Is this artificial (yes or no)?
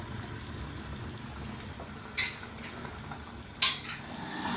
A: no